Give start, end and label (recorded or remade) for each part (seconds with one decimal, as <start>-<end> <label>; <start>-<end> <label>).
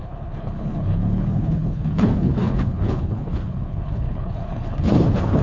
0.0-5.4 remade